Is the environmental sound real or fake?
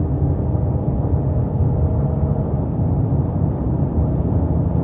real